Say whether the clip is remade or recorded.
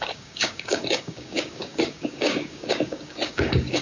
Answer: remade